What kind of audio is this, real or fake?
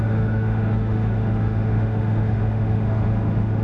fake